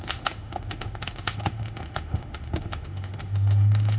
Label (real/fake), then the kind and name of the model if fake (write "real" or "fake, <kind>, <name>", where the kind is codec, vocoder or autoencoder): fake, autoencoder, DAC-VAE